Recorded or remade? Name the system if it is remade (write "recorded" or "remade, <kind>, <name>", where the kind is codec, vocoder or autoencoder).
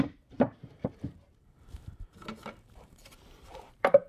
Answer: remade, vocoder, BigVGAN v2